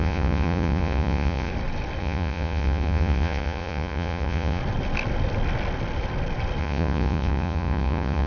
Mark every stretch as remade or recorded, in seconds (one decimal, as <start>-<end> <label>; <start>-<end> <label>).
0.0-1.5 remade; 1.5-2.0 recorded; 2.0-4.6 remade; 4.6-6.6 recorded; 6.6-8.3 remade